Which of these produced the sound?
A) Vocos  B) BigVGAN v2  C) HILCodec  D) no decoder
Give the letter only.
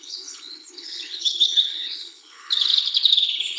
C